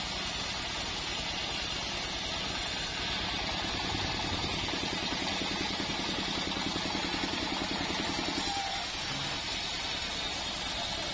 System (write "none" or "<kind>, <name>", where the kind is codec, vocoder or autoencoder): none